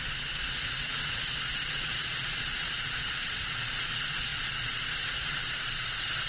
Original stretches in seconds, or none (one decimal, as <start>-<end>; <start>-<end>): none